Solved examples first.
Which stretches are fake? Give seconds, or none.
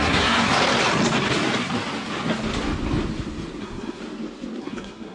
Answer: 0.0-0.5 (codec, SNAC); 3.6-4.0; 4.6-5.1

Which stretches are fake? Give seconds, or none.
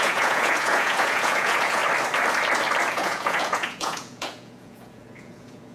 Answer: 0.0-1.8 (vocoder, Vocos); 2.9-5.7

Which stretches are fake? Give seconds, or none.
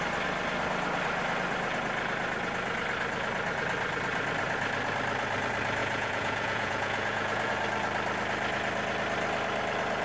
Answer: 5.8-7.5 (vocoder, Vocos)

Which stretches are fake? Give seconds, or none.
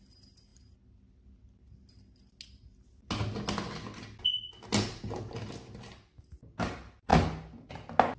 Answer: none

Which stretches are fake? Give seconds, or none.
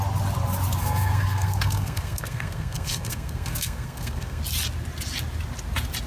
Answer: 0.8-4.4 (codec, SNAC)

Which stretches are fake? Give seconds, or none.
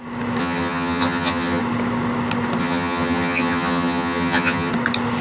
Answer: 0.4-1.6 (vocoder, HiFi-GAN); 2.6-4.7